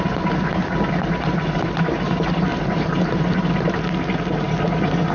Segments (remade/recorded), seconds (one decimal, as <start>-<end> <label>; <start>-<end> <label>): 0.0-2.5 recorded; 2.5-3.8 remade; 3.8-5.1 recorded